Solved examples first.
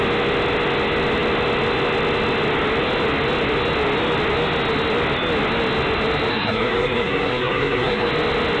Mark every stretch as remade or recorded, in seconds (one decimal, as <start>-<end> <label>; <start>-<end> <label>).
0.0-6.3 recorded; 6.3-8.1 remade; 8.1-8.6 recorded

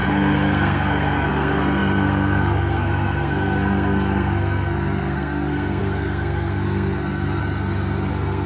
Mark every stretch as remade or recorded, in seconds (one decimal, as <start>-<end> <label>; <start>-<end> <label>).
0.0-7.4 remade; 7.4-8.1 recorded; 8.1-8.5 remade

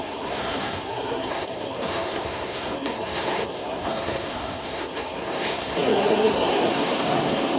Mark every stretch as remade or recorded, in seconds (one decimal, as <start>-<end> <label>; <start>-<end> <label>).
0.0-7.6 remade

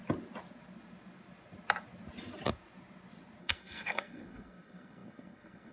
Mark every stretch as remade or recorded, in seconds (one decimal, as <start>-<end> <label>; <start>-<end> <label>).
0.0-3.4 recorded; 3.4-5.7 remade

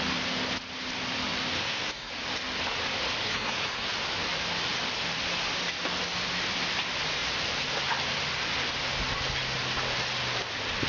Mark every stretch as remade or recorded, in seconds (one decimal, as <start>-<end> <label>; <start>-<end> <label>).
0.0-1.6 recorded; 1.6-2.1 remade; 2.1-3.2 recorded; 3.2-3.9 remade; 3.9-10.9 recorded

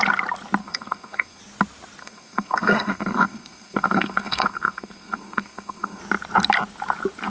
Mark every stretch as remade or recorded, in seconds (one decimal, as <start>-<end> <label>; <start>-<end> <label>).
0.0-0.6 recorded; 0.6-1.4 remade; 1.4-2.0 recorded; 2.0-6.0 remade; 6.0-7.3 recorded

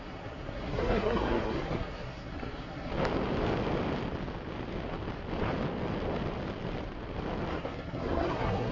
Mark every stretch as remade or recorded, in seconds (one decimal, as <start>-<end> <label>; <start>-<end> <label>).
0.0-2.9 remade; 2.9-7.5 recorded; 7.5-8.7 remade

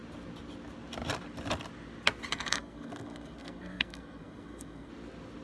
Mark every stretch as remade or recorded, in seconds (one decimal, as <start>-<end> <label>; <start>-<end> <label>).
0.0-2.3 recorded; 2.3-4.9 remade; 4.9-5.4 recorded